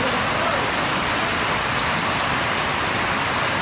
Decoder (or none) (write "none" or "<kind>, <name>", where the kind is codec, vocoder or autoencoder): none